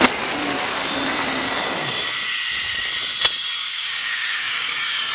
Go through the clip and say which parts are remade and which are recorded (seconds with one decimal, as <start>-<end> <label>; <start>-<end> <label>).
0.0-3.6 recorded; 3.6-5.1 remade